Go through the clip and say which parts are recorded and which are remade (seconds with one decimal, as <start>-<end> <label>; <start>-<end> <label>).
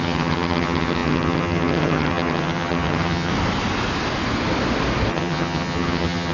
0.0-3.3 remade; 3.3-5.1 recorded; 5.1-6.3 remade